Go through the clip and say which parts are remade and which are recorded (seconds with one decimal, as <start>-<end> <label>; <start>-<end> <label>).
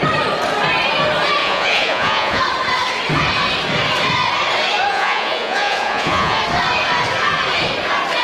0.0-1.4 recorded; 1.4-2.4 remade; 2.4-4.9 recorded; 4.9-6.4 remade; 6.4-8.2 recorded